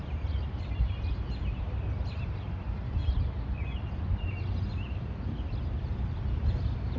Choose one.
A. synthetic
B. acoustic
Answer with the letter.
B